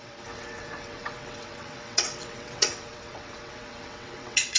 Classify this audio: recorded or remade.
remade